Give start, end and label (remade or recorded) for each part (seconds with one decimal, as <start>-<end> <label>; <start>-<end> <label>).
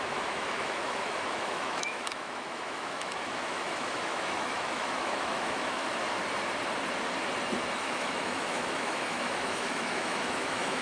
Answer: 0.0-5.9 remade; 5.9-7.8 recorded; 7.8-10.8 remade